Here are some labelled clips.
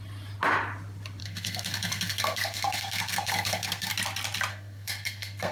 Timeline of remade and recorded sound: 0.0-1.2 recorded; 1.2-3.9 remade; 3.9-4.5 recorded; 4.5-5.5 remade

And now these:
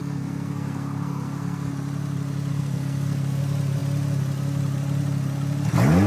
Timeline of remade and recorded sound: 0.0-1.7 remade; 1.7-2.5 recorded; 2.5-3.4 remade; 3.4-6.1 recorded

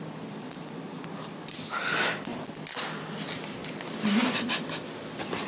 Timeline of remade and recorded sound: 0.0-5.5 recorded

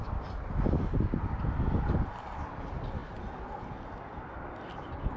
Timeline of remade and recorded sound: 0.0-5.2 recorded